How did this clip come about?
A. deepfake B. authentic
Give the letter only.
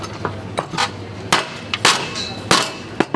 B